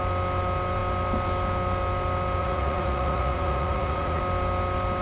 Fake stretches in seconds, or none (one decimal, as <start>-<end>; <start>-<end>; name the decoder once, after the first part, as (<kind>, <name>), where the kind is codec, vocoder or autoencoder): 2.4-4.2 (vocoder, Vocos)